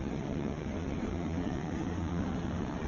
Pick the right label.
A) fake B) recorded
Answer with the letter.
A